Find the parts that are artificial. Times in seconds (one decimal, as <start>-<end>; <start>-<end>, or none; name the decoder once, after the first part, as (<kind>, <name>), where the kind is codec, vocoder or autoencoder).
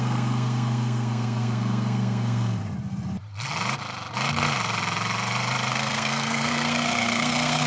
0.0-2.6 (codec, SNAC); 5.7-7.7